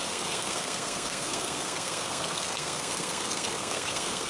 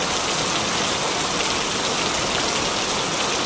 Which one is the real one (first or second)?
second